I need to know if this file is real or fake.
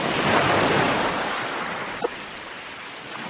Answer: real